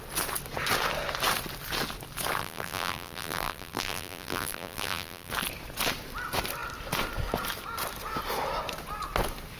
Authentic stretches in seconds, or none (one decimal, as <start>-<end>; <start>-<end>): 0.0-2.4; 5.3-9.6